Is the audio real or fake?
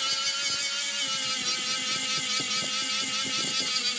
real